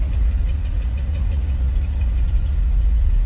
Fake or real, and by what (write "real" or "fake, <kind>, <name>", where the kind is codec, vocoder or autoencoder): fake, vocoder, Vocos